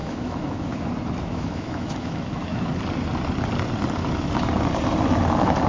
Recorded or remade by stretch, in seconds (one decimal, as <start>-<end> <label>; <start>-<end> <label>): 0.0-0.9 remade; 0.9-1.3 recorded; 1.3-2.7 remade; 2.7-5.7 recorded